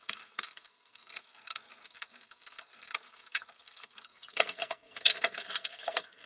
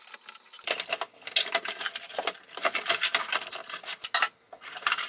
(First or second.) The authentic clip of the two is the second